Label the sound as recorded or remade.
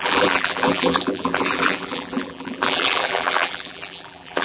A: remade